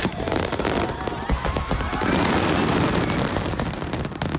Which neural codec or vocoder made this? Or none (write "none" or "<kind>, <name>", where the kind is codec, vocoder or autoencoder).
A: vocoder, BigVGAN v2